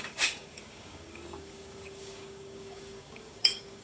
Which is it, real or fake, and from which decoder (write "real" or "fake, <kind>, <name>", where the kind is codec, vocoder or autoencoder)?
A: fake, codec, DAC